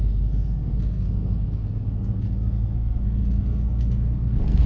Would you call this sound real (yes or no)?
no